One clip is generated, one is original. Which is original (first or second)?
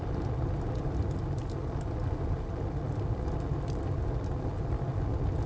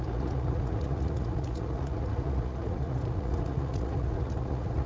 first